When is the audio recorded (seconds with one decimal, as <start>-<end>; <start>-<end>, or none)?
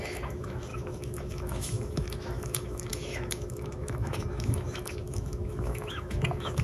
none